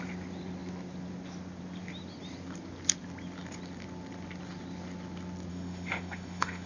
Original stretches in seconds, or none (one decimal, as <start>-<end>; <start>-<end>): 0.0-5.5